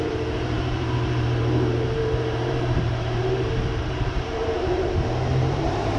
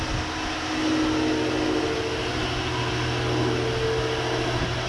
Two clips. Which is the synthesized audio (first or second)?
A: first